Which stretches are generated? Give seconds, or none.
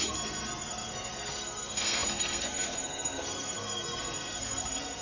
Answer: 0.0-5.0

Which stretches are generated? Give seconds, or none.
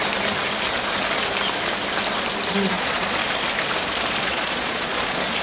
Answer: 2.5-3.2; 4.2-5.4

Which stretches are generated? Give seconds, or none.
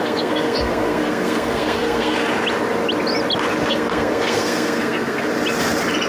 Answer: 0.0-2.3; 3.7-5.3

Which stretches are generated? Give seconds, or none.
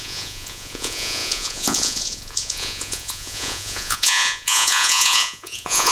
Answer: 0.0-5.9